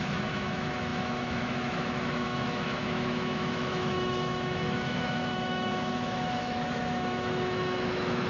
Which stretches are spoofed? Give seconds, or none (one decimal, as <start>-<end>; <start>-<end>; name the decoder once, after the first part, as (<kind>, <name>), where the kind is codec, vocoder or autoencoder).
0.0-8.3 (autoencoder, DAC-VAE)